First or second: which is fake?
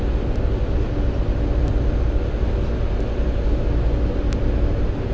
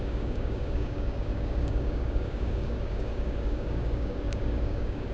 second